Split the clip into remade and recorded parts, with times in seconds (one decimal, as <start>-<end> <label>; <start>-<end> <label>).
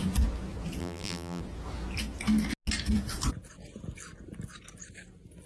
0.0-0.8 recorded; 0.8-1.4 remade; 1.4-5.5 recorded